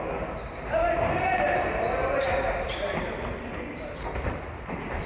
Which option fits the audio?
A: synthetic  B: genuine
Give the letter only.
B